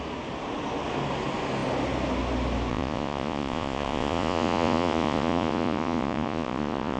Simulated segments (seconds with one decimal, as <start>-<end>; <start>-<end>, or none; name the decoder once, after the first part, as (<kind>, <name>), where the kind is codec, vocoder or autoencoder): 2.7-7.0 (vocoder, Vocos)